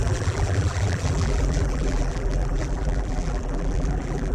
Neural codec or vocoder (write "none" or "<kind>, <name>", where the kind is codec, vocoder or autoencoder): vocoder, BigVGAN v2